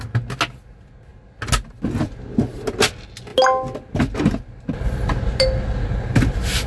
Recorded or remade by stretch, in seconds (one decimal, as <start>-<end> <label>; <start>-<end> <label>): 0.0-6.7 recorded